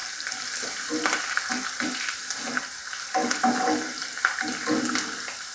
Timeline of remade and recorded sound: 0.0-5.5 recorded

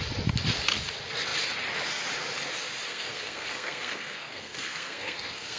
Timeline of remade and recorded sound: 0.0-2.9 recorded; 2.9-5.6 remade